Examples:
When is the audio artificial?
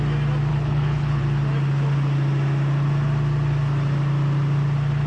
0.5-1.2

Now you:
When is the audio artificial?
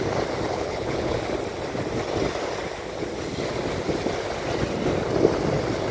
0.5-1.2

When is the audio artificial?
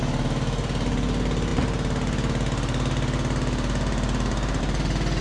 none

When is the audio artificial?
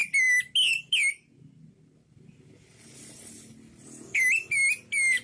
none